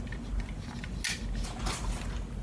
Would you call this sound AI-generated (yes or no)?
no